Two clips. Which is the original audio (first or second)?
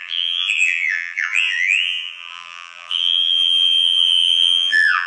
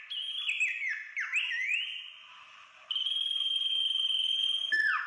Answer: second